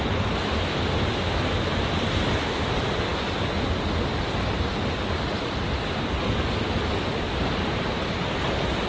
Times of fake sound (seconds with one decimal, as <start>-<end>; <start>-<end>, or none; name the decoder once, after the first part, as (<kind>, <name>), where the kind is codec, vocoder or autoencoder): none